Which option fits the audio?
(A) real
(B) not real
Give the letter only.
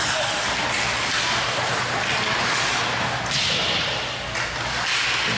A